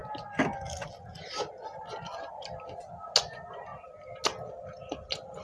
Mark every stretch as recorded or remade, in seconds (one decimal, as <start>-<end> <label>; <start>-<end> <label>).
0.0-3.2 recorded; 3.2-3.7 remade; 3.7-4.5 recorded; 4.5-5.4 remade